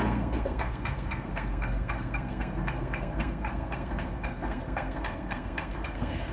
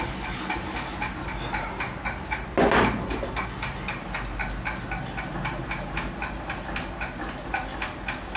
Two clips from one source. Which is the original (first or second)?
second